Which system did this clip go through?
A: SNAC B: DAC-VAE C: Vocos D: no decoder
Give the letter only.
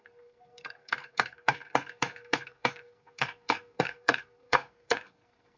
A